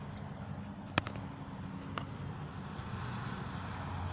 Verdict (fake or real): real